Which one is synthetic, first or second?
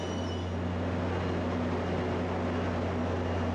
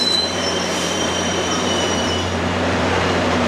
second